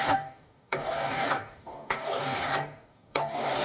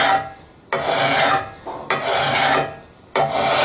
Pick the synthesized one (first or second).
first